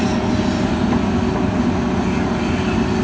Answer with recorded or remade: recorded